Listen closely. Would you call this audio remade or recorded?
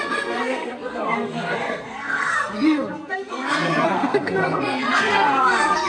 remade